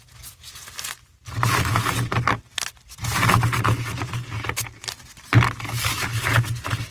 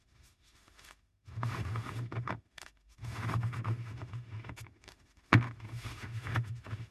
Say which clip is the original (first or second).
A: first